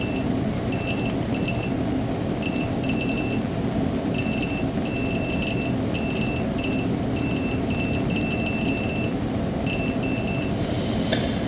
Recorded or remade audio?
recorded